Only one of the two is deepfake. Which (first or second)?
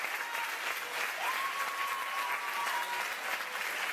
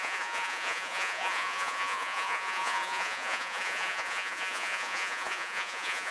second